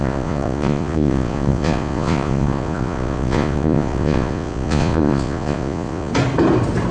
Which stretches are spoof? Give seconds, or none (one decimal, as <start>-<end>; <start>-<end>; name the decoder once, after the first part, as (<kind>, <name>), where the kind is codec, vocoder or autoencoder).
0.0-6.1 (vocoder, Vocos)